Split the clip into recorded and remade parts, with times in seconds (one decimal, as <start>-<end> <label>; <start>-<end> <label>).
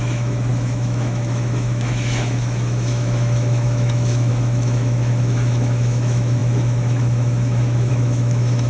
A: 0.0-8.7 remade